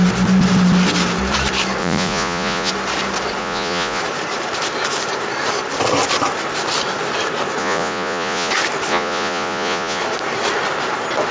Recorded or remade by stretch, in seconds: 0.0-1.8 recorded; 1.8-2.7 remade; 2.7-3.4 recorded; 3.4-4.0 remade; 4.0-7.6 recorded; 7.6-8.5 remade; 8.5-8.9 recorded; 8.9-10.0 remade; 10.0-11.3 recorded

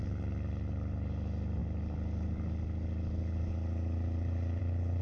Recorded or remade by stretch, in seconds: 0.0-5.0 recorded

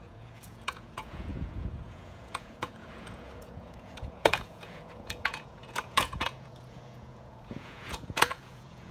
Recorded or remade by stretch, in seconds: 0.0-8.9 remade

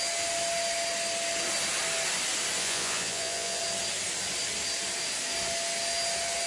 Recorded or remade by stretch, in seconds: 0.0-2.6 recorded; 2.6-3.6 remade; 3.6-6.5 recorded